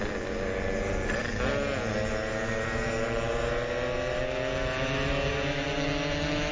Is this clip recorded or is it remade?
recorded